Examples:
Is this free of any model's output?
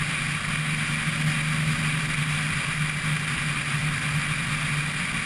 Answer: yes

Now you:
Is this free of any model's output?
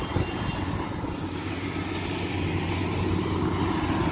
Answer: yes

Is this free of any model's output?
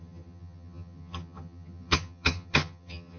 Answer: no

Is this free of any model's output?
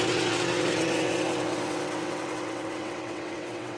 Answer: no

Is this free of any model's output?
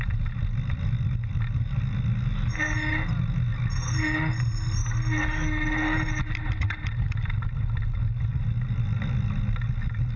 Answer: yes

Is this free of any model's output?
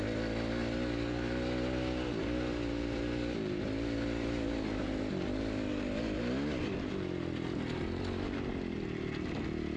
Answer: yes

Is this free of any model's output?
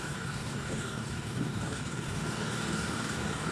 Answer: no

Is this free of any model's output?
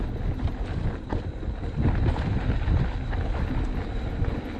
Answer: yes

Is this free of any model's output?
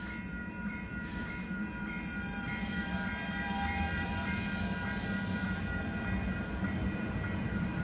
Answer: no